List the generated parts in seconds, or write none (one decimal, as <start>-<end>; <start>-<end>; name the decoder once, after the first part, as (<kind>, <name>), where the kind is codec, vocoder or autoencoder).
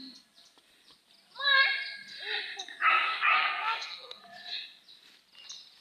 3.2-4.2 (codec, SNAC)